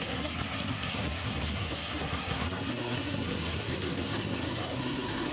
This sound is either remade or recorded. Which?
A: remade